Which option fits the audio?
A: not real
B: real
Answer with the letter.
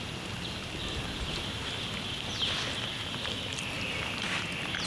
B